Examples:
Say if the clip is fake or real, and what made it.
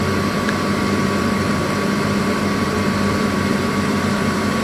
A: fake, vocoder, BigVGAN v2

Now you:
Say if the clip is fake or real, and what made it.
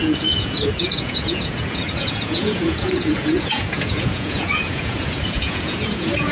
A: fake, vocoder, Vocos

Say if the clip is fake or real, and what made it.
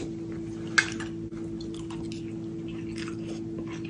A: real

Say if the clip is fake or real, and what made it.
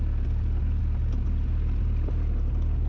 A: real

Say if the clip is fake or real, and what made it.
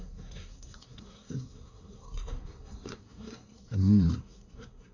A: fake, codec, SNAC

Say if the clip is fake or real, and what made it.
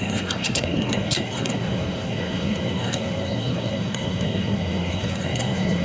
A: fake, codec, SNAC